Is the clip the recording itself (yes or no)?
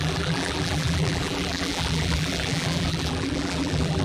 no